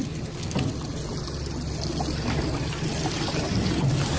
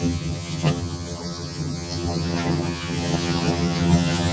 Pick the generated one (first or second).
second